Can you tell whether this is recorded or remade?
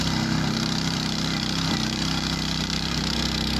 remade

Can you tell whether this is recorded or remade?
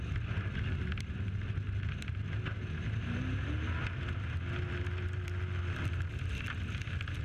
recorded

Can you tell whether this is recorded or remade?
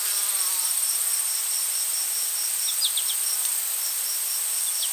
recorded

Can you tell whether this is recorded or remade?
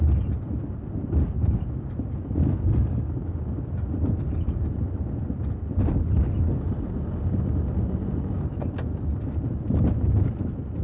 recorded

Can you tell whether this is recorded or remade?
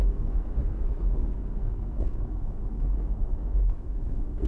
remade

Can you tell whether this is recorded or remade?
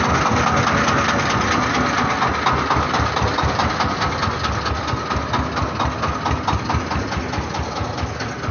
recorded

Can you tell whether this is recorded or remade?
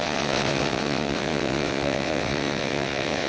remade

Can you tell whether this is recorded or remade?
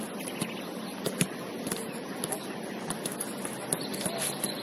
recorded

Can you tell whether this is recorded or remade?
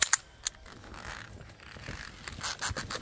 recorded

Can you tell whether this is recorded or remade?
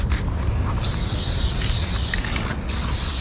recorded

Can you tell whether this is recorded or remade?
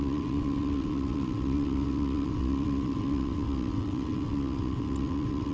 remade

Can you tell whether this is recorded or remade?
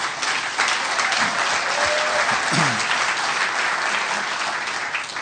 recorded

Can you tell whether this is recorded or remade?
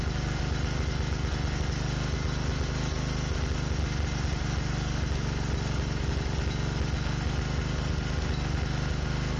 recorded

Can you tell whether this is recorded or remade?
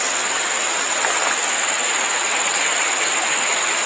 recorded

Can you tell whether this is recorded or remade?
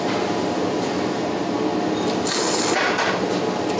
recorded